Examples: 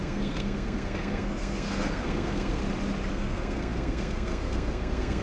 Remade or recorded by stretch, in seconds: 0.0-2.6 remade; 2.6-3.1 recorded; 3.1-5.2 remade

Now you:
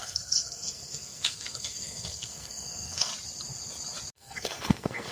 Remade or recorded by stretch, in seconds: 0.0-3.1 remade; 3.1-4.1 recorded; 4.1-5.1 remade

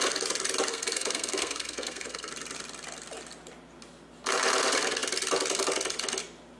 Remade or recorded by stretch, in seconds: 0.0-0.7 recorded; 0.7-2.3 remade; 2.3-6.6 recorded

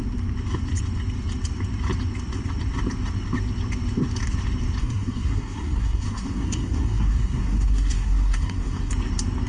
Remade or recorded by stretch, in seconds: 0.0-4.8 recorded; 4.8-8.9 remade; 8.9-9.5 recorded